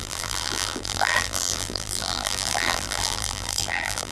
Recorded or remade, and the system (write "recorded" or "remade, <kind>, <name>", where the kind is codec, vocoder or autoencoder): remade, vocoder, BigVGAN v2